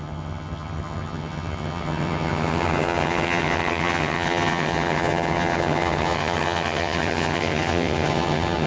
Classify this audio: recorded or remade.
remade